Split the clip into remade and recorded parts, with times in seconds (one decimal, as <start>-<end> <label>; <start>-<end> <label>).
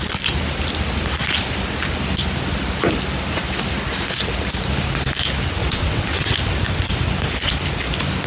0.0-5.6 recorded; 5.6-6.3 remade; 6.3-8.3 recorded